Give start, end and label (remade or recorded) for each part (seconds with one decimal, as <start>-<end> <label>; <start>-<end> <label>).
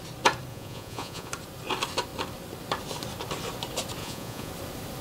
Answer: 0.0-0.5 recorded; 0.5-1.3 remade; 1.3-4.0 recorded; 4.0-4.5 remade; 4.5-5.0 recorded